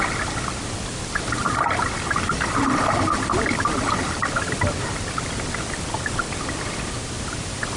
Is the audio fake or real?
fake